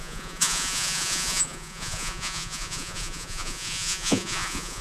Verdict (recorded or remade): remade